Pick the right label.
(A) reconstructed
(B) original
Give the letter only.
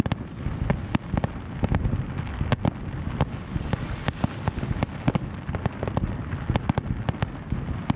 B